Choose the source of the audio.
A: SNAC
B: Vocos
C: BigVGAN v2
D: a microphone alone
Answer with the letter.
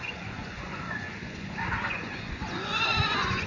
B